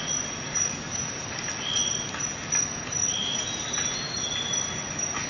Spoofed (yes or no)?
no